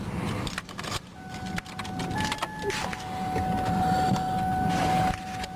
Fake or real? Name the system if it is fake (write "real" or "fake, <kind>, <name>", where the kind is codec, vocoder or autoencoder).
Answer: real